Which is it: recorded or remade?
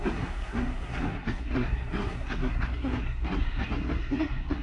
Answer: remade